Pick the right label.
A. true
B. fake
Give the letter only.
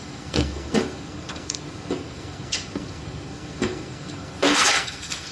B